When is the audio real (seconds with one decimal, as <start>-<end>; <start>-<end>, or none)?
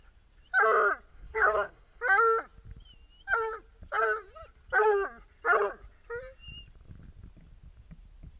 0.0-1.1; 2.0-8.4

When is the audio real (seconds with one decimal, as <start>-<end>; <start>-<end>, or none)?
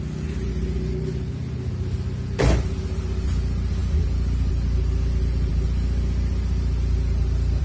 0.0-7.6